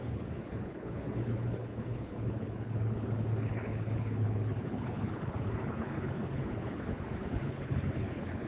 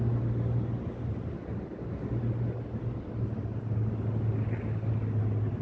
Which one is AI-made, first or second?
first